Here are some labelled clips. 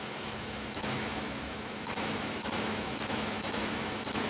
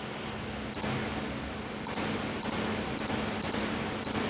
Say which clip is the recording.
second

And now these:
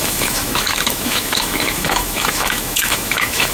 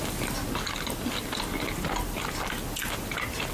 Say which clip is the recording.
second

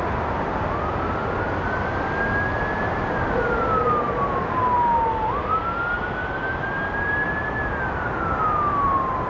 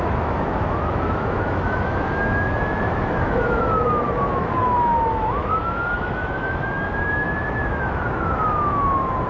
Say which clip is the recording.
first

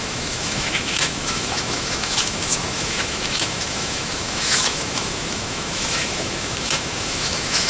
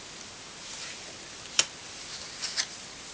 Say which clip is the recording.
second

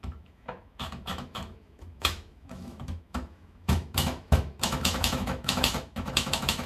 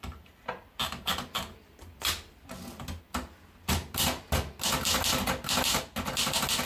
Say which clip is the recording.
second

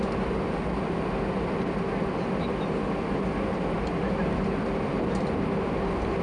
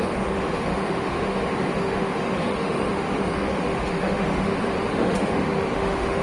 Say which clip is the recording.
first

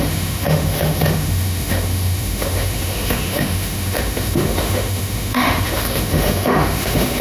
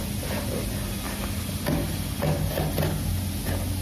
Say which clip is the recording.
second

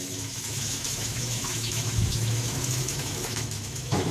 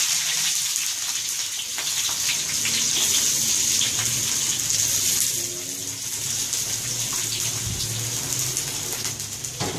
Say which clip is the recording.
second